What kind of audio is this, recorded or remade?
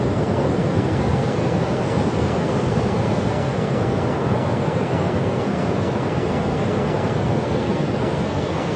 remade